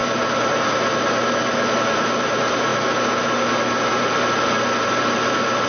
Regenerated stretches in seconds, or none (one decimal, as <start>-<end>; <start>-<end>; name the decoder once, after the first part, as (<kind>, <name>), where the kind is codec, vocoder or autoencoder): none